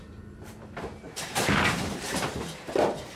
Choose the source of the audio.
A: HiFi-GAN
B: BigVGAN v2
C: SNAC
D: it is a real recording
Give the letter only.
B